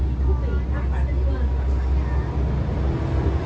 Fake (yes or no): no